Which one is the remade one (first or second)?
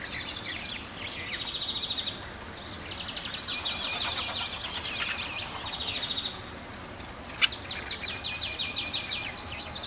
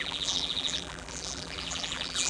second